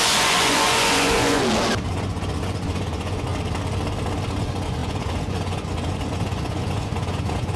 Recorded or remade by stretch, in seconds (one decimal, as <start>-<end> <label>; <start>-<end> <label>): 0.0-1.4 remade; 1.4-1.9 recorded; 1.9-3.3 remade; 3.3-4.3 recorded; 4.3-7.6 remade